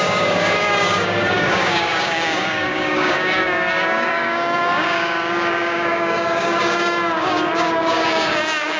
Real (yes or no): no